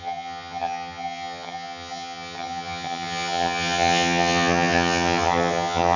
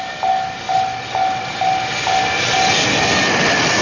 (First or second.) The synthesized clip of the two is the first